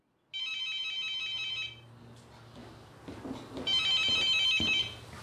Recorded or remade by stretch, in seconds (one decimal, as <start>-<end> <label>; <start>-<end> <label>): 0.0-5.2 recorded